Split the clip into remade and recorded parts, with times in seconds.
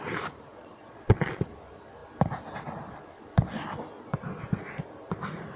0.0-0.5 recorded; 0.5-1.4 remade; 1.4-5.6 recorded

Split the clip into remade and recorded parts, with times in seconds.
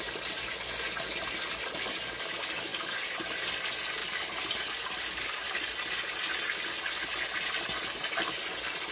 0.0-8.9 recorded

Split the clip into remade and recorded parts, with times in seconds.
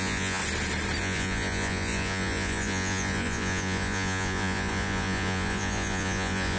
0.0-0.4 remade; 0.4-1.0 recorded; 1.0-6.6 remade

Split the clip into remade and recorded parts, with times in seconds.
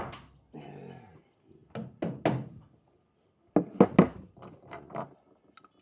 0.0-5.8 recorded